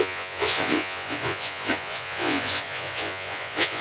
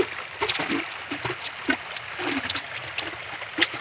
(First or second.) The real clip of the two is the second